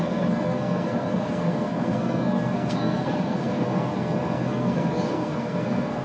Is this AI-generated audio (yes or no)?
yes